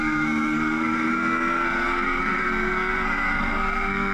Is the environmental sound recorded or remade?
remade